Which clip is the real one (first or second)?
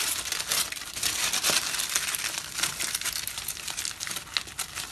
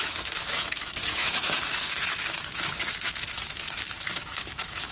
first